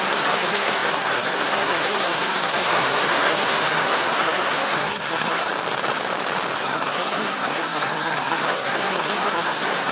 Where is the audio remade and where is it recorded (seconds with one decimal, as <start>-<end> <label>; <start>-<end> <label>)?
0.0-5.5 remade; 5.5-6.6 recorded; 6.6-9.9 remade